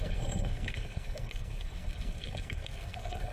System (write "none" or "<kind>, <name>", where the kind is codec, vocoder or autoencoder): codec, SNAC